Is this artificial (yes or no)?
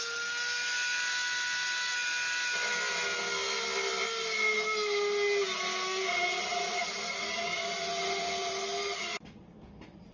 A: no